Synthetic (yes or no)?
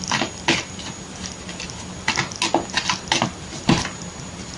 no